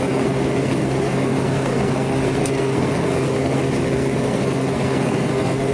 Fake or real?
fake